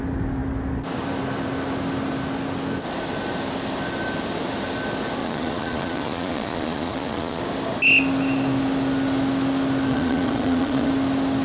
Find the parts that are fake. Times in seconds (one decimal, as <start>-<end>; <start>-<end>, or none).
5.2-7.4; 9.9-10.9